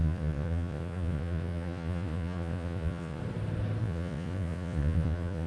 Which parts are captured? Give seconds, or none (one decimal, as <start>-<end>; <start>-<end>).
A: 3.2-3.8